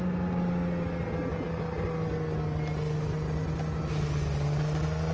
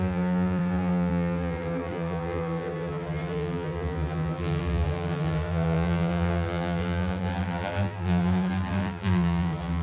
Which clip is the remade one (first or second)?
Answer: second